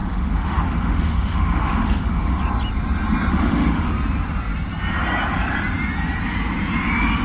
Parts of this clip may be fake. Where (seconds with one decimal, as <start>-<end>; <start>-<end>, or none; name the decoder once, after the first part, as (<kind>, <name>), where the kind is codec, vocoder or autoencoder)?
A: 0.0-2.4 (autoencoder, DAC-VAE); 3.3-3.9